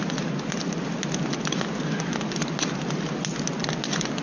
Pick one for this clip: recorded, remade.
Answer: recorded